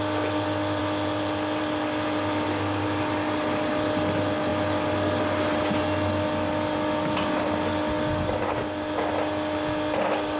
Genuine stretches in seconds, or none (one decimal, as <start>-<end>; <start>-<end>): 0.0-10.4